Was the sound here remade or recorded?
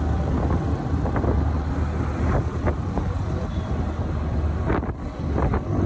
remade